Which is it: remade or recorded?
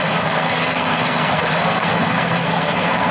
remade